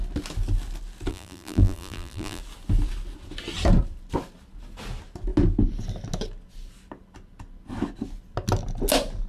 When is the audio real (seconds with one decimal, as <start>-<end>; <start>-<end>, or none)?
0.0-1.1; 2.4-9.3